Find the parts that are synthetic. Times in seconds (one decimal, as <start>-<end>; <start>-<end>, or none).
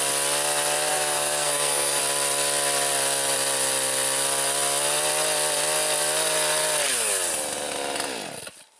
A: 0.9-2.0